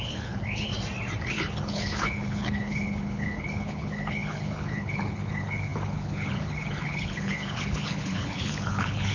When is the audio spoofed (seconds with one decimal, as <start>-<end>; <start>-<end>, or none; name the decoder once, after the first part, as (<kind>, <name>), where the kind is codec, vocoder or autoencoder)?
0.0-0.7 (codec, HILCodec); 1.3-9.1